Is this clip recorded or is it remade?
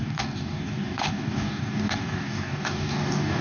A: remade